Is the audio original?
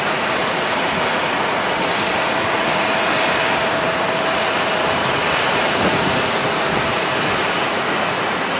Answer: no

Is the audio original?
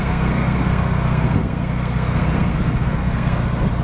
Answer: no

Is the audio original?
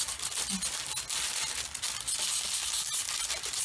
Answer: yes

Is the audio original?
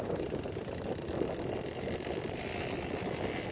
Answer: yes